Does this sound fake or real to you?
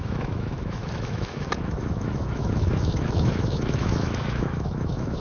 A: fake